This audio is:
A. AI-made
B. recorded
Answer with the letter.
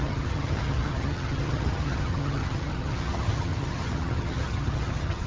A